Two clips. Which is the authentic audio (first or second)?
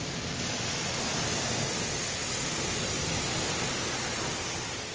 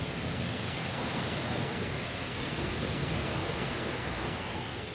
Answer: first